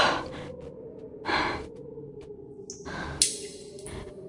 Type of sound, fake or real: real